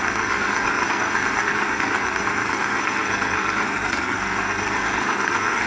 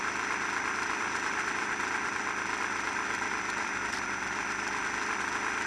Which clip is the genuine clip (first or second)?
second